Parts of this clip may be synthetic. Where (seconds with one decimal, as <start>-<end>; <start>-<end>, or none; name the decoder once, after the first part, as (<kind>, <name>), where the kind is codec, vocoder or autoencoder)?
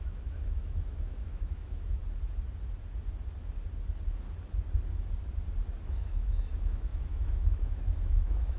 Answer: 0.0-2.0 (autoencoder, DAC-VAE); 5.8-8.6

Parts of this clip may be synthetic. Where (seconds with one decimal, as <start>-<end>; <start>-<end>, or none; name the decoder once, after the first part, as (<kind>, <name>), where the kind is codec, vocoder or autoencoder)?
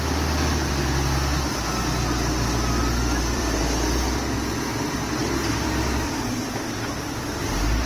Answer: 2.8-3.6 (vocoder, BigVGAN v2); 5.2-6.2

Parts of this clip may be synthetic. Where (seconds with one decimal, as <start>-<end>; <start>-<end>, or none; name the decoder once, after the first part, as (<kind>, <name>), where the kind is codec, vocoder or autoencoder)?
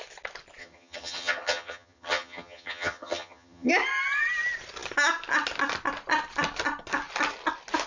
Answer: 0.6-3.7 (vocoder, HiFi-GAN)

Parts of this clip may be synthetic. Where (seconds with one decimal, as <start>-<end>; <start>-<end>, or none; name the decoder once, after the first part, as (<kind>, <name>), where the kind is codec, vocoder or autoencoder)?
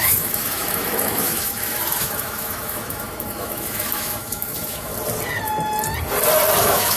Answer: 0.0-4.9 (autoencoder, DAC-VAE); 6.6-7.0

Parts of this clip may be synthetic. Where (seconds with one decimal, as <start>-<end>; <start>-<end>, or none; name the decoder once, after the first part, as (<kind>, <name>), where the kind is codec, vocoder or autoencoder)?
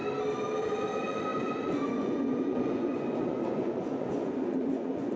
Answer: 0.6-5.2 (vocoder, Vocos)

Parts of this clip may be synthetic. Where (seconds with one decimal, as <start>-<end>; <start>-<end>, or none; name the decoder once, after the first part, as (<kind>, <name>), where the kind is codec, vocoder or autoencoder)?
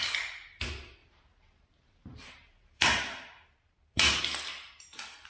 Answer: 1.0-4.2 (vocoder, BigVGAN v2)